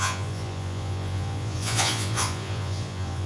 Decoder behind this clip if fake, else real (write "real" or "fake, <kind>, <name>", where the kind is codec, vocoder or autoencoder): fake, vocoder, Vocos